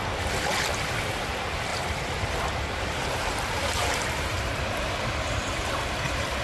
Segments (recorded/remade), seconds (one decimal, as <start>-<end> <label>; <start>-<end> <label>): 0.0-1.7 recorded; 1.7-5.5 remade; 5.5-6.4 recorded